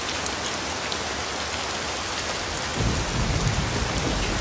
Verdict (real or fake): real